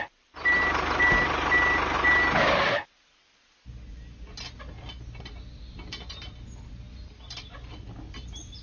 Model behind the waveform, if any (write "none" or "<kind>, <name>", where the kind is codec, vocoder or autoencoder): none